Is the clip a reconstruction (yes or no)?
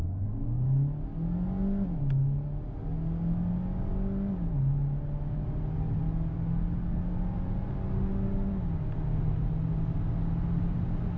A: no